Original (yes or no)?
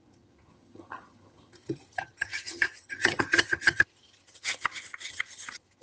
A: no